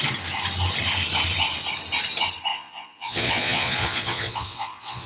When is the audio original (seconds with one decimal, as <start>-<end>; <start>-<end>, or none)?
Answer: 0.0-2.5